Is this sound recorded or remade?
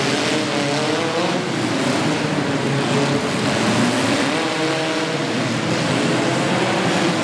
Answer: recorded